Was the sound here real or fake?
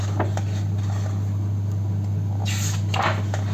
real